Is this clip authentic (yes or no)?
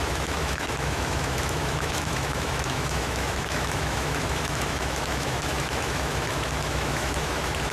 no